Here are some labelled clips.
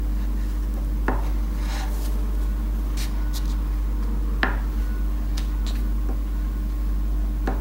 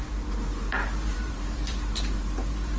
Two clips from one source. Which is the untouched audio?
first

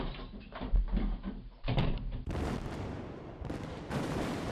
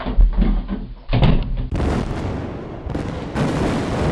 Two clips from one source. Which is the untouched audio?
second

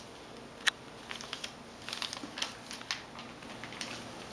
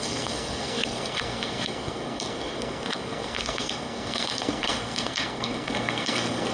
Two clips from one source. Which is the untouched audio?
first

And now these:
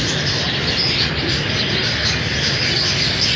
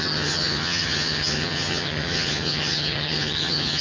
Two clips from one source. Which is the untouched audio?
first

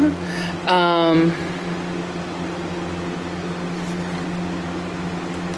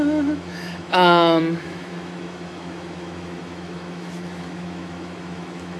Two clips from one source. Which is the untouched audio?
first